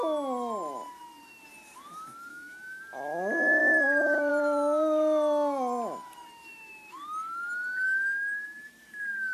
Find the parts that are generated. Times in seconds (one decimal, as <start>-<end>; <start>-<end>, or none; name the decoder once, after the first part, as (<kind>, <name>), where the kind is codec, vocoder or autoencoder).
2.3-2.8 (autoencoder, DAC-VAE)